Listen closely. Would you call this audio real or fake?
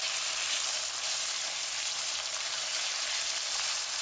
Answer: real